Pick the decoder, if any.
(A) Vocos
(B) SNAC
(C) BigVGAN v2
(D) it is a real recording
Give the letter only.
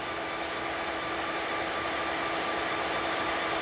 D